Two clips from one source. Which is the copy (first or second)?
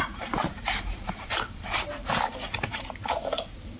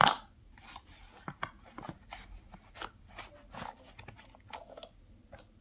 first